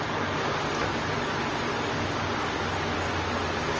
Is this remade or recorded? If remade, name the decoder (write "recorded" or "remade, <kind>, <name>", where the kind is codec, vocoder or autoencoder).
recorded